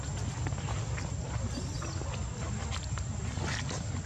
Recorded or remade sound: recorded